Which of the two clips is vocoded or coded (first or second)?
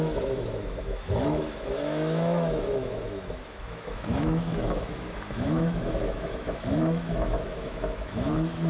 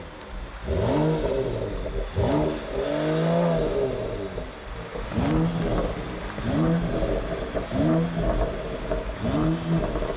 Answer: first